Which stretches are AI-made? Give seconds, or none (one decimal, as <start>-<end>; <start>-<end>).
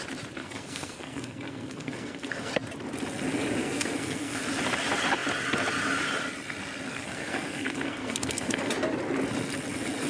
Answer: 0.4-2.5; 3.6-4.4; 6.9-8.7